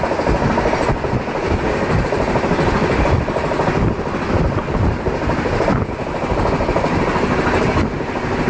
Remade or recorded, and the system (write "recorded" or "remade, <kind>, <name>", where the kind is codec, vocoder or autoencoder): recorded